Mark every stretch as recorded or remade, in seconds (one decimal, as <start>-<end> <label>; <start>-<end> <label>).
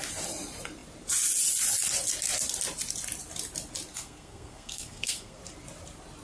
0.0-3.9 recorded; 3.9-5.4 remade; 5.4-6.2 recorded